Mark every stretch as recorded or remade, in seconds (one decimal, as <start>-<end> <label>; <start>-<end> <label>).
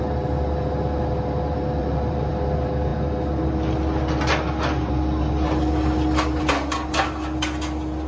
0.0-1.8 recorded; 1.8-2.3 remade; 2.3-8.1 recorded